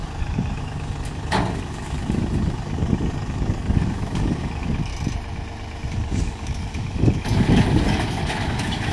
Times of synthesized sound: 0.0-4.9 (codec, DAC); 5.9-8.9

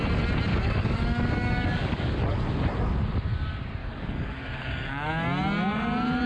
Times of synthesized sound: 0.5-2.1 (codec, DAC); 3.8-5.1

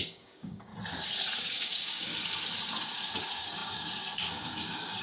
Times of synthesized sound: 0.0-0.7 (codec, DAC); 1.4-2.1; 2.8-5.0